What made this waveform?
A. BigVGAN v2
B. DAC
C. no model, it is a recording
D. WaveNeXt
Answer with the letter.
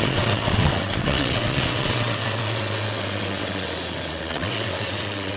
D